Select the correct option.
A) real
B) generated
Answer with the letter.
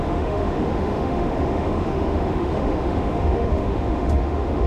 B